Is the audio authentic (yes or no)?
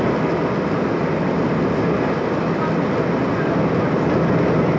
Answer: yes